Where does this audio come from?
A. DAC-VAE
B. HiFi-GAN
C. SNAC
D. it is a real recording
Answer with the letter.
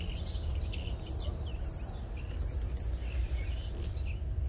D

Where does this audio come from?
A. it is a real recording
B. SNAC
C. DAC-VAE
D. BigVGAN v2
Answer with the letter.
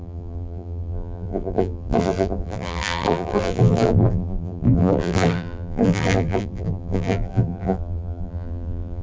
D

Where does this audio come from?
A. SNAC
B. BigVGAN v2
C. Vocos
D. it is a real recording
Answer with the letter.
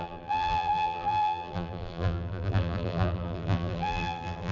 B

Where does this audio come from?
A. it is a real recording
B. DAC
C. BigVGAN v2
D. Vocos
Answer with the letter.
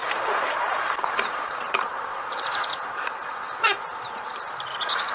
C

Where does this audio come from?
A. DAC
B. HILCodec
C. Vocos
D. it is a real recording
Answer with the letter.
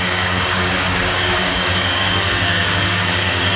A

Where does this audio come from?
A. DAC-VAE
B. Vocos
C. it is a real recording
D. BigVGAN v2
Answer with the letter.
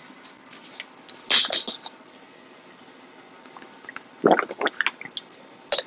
C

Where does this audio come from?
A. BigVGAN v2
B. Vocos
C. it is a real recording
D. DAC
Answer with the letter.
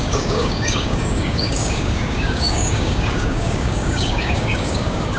D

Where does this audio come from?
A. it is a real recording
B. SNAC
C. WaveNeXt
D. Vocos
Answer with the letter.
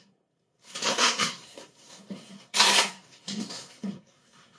B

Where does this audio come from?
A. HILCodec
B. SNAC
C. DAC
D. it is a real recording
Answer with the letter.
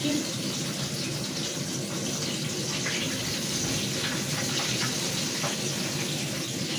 D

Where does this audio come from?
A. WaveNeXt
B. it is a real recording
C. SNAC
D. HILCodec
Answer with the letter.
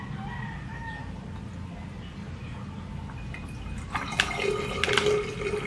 B